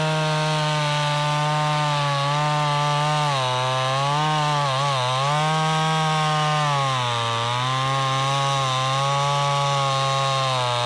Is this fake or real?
real